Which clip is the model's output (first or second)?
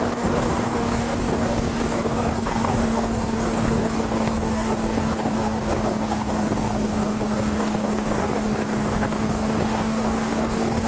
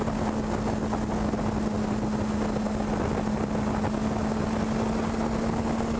first